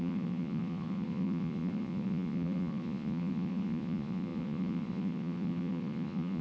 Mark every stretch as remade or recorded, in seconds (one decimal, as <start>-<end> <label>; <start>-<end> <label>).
0.0-6.4 remade